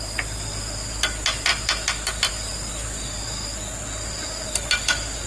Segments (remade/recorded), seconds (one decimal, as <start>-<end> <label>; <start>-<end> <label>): 0.0-5.3 recorded